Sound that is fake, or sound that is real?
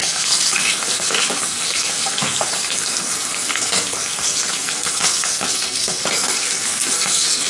fake